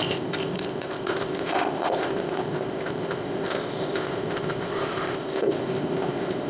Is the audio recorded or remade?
remade